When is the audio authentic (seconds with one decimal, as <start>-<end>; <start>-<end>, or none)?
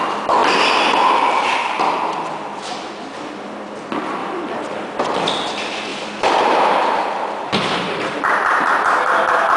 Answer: 0.0-4.2; 5.0-5.9; 8.7-9.6